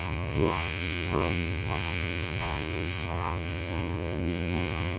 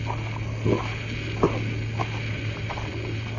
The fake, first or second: first